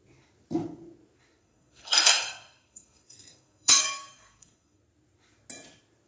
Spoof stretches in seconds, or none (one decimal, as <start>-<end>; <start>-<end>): 1.4-4.8